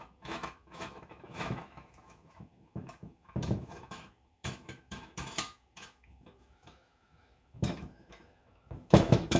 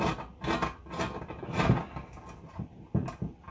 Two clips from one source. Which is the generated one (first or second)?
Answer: first